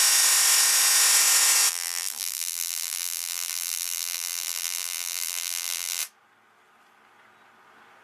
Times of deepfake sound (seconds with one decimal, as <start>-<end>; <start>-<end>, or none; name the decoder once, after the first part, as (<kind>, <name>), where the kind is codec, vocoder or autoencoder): 1.7-6.0 (vocoder, BigVGAN v2)